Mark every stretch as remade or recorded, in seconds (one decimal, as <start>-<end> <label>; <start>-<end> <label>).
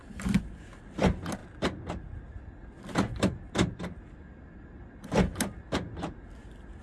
0.0-6.8 recorded